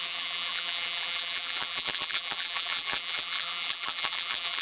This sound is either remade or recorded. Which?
remade